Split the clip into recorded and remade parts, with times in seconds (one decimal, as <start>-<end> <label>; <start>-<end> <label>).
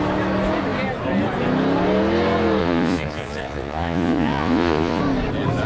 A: 0.0-2.6 recorded; 2.6-5.0 remade; 5.0-5.7 recorded